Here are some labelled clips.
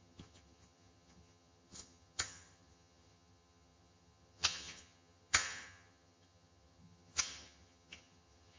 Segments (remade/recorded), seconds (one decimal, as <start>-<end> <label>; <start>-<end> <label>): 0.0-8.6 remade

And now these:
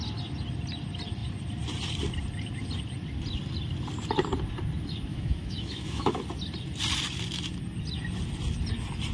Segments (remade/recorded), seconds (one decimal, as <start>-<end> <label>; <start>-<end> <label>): 0.0-5.1 recorded; 5.1-6.2 remade; 6.2-9.1 recorded

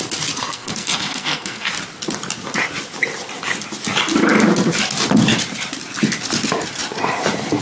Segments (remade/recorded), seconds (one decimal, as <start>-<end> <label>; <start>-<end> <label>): 0.0-0.4 recorded; 0.4-1.7 remade; 1.7-7.6 recorded

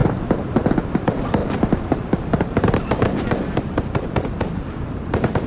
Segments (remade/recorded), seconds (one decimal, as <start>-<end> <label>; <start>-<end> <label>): 0.0-0.9 recorded; 0.9-5.5 remade